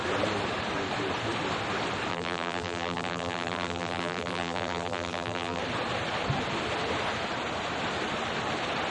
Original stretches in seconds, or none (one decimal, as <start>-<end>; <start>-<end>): 0.0-2.1; 5.6-8.9